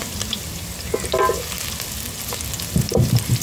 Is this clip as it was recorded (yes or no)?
yes